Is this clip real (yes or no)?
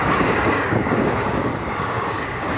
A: no